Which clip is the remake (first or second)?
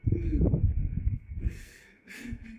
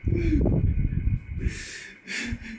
first